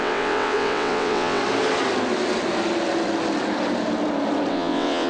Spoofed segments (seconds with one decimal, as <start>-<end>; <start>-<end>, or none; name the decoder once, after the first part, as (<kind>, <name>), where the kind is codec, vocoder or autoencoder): 0.0-1.4 (vocoder, WaveNeXt); 4.5-5.1